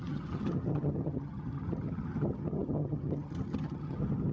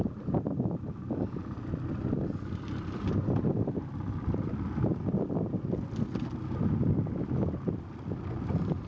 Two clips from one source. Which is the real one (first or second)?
second